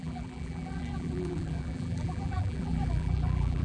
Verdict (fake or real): fake